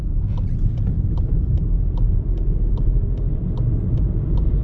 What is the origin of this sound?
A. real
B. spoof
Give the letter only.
A